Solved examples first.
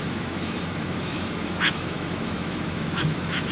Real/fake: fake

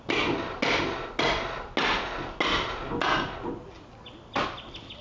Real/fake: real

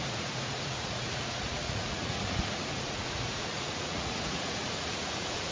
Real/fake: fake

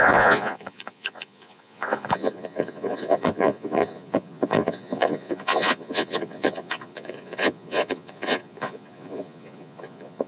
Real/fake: fake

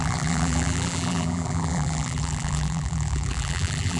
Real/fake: fake